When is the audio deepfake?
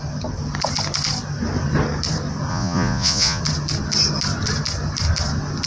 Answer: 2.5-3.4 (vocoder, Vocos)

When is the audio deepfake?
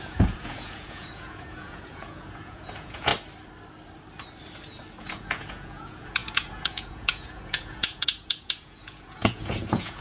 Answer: 0.0-3.1 (vocoder, Vocos); 5.0-10.0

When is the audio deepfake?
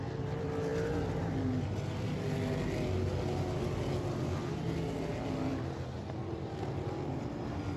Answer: none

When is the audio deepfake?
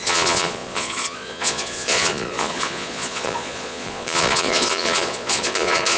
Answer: 0.0-6.0 (vocoder, Vocos)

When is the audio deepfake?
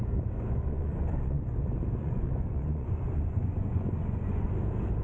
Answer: 0.6-1.4 (vocoder, Vocos); 2.0-4.5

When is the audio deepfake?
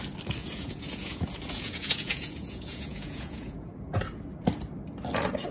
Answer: 0.4-3.7 (vocoder, Vocos)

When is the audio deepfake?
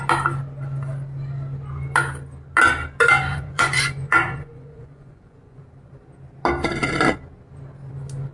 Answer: 3.3-5.6 (vocoder, Vocos)